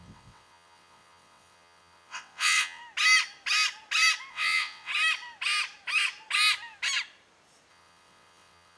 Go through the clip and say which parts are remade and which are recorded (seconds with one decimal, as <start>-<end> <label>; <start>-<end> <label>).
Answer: 0.0-2.8 remade; 2.8-4.3 recorded; 4.3-4.9 remade; 4.9-7.7 recorded; 7.7-8.8 remade